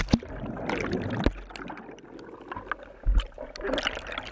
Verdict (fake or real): real